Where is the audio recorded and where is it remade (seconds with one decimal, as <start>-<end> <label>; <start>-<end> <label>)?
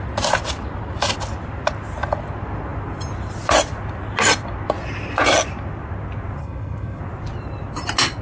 0.0-6.4 recorded; 6.4-7.0 remade; 7.0-8.2 recorded